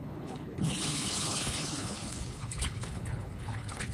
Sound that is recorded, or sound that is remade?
remade